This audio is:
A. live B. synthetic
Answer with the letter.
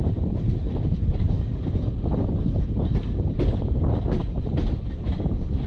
B